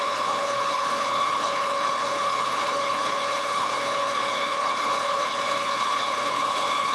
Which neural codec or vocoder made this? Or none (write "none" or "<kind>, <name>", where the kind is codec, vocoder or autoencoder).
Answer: codec, HILCodec